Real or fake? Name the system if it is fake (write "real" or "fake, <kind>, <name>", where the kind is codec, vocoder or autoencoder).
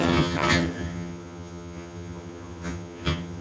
fake, vocoder, HiFi-GAN